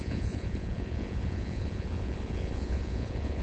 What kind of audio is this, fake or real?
fake